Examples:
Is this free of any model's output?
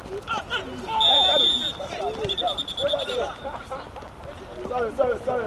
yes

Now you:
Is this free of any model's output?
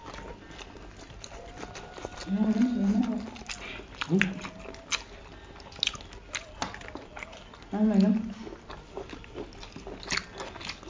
yes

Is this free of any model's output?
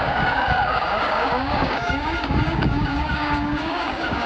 no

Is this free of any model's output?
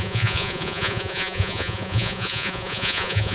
no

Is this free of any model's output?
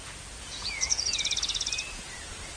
no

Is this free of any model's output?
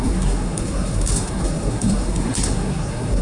no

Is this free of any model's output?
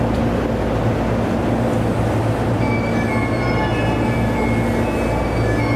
yes